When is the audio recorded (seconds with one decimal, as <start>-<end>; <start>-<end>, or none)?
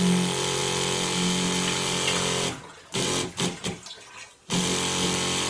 0.0-5.5